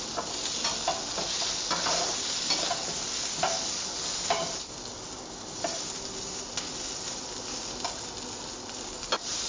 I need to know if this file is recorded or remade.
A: recorded